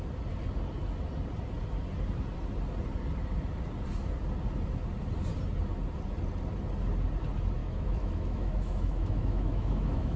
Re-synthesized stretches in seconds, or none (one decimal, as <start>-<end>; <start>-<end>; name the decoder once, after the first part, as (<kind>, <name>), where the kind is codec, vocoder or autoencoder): 7.6-10.2 (autoencoder, DAC-VAE)